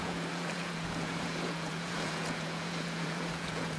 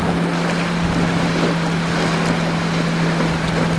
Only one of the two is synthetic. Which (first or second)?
first